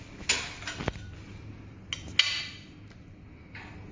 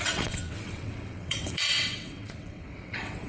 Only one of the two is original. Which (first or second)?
first